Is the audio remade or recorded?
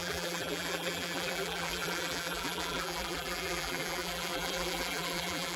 remade